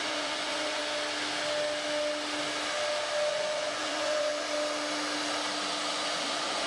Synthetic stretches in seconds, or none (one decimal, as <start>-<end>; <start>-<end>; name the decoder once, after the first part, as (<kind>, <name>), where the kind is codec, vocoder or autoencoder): 0.0-0.8 (vocoder, Vocos); 3.3-4.3; 5.9-6.7